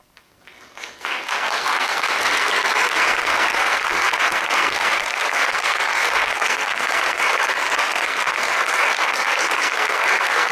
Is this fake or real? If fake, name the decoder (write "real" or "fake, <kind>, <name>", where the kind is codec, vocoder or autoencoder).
fake, codec, SNAC